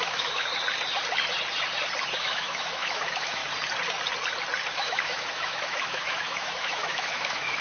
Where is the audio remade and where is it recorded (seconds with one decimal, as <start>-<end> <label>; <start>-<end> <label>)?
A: 0.0-0.5 remade; 0.5-2.2 recorded; 2.2-3.4 remade; 3.4-4.7 recorded; 4.7-7.6 remade